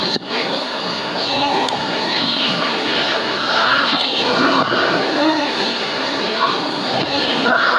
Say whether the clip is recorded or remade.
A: remade